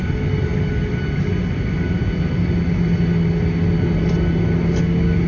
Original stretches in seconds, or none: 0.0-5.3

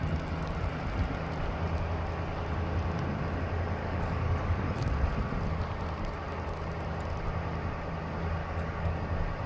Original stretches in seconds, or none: 0.0-3.8; 4.9-8.4; 8.9-9.5

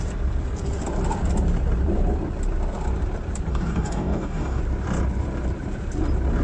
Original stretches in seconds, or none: 0.0-3.5; 4.6-6.4

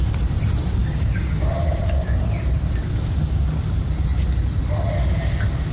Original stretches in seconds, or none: 0.0-0.8; 2.3-2.9; 3.4-5.7

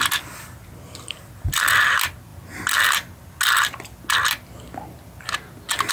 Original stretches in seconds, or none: 0.0-5.9

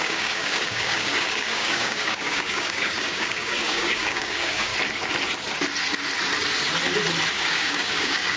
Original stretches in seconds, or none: 4.7-7.3